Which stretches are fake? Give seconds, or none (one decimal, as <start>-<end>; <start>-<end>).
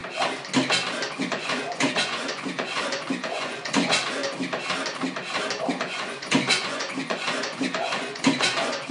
1.2-4.2; 5.7-8.9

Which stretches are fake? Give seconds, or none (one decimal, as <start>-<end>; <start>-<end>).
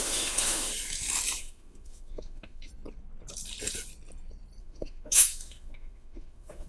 0.0-0.7; 1.4-2.7; 4.6-6.7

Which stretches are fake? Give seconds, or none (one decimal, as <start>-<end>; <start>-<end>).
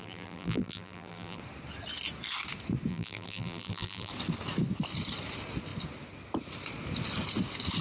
0.0-1.4; 2.9-4.1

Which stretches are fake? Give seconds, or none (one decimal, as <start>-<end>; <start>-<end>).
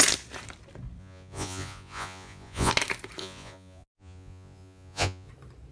1.0-2.7; 3.2-5.3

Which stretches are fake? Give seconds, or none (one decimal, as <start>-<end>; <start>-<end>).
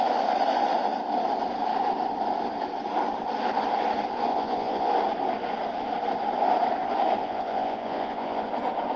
4.3-4.9; 7.2-8.5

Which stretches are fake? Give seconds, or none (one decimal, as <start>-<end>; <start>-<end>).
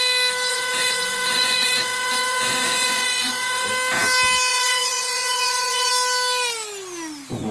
0.5-3.7; 4.5-5.9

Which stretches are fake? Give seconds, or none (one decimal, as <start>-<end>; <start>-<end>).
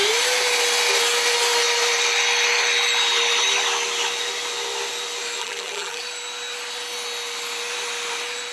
5.4-6.0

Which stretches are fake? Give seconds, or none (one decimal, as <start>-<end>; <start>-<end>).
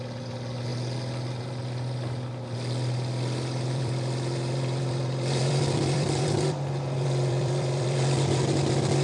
0.0-0.7; 1.4-9.0